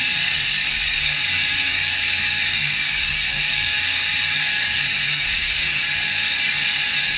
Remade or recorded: remade